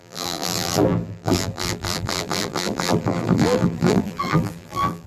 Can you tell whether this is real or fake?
fake